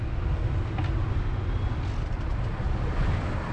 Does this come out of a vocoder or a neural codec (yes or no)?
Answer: yes